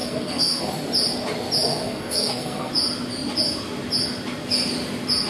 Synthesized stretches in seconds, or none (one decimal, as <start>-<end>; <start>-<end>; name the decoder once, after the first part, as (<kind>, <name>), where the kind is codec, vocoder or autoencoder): 0.0-0.7 (codec, SNAC); 1.7-2.7